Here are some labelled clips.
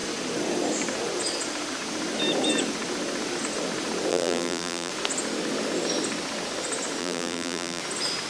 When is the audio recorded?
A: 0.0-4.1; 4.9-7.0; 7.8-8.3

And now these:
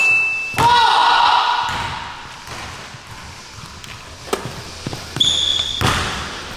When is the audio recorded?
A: 0.0-5.5

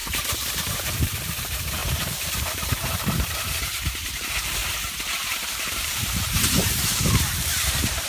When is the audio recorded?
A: 4.6-5.3